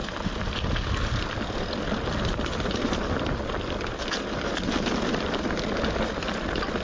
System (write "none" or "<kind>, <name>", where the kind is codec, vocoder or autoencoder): none